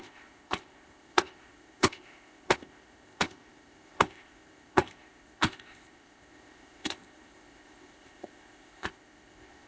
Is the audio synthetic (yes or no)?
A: yes